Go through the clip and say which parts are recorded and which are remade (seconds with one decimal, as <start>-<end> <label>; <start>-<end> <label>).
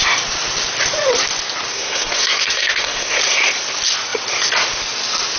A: 0.0-1.7 recorded; 1.7-3.2 remade; 3.2-5.4 recorded